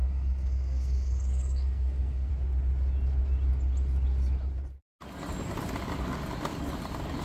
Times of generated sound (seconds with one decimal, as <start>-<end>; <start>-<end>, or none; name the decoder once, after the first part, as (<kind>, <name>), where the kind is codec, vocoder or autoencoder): 0.0-2.3 (codec, SNAC)